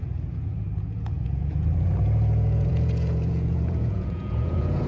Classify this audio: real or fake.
fake